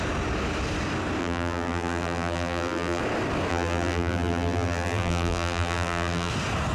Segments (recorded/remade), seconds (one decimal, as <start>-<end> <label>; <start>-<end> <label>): 0.0-1.2 recorded; 1.2-3.0 remade; 3.0-3.5 recorded; 3.5-6.3 remade; 6.3-6.7 recorded